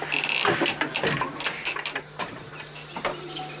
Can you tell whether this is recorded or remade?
recorded